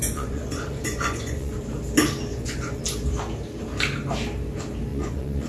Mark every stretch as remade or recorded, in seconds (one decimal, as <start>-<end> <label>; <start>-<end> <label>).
0.0-1.6 remade; 1.6-2.3 recorded; 2.3-2.8 remade; 2.8-4.9 recorded; 4.9-5.5 remade